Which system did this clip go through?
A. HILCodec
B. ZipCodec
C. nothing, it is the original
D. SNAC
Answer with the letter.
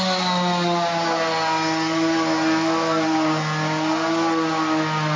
C